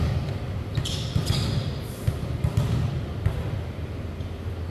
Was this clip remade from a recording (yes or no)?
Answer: no